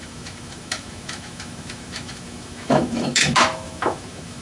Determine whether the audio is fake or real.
fake